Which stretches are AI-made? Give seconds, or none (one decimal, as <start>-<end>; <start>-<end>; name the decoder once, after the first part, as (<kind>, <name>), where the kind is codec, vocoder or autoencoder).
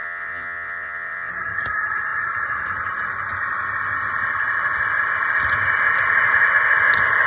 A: 0.0-1.3 (vocoder, WaveNeXt)